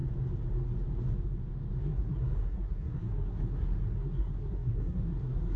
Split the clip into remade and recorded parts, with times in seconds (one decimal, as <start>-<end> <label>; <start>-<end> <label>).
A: 0.0-1.8 recorded; 1.8-5.6 remade